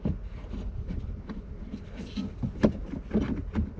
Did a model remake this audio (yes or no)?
no